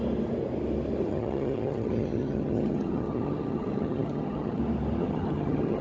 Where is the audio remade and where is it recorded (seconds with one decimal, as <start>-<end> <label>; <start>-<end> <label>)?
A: 0.0-1.1 recorded; 1.1-4.6 remade; 4.6-5.0 recorded; 5.0-5.8 remade